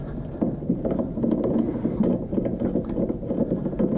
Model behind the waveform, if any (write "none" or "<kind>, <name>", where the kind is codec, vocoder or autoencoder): none